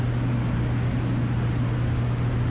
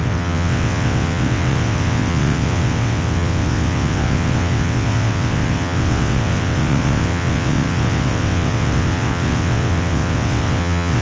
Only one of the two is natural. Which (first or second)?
first